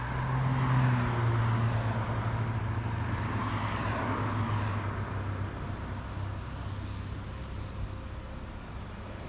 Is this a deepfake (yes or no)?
no